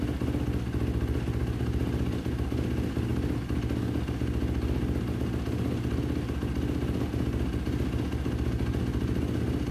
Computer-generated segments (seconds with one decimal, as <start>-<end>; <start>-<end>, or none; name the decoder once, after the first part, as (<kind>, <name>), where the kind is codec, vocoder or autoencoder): none